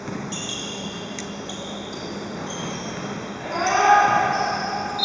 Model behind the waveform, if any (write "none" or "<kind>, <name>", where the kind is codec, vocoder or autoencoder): none